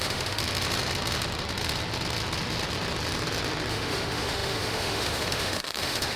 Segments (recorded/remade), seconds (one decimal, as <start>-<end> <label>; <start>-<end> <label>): 0.0-0.4 remade; 0.4-3.7 recorded; 3.7-6.2 remade